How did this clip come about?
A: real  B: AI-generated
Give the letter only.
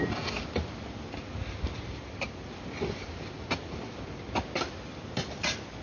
A